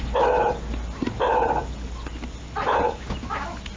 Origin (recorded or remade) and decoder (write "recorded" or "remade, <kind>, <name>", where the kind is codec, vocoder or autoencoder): recorded